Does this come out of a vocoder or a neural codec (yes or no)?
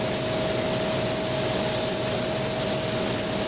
no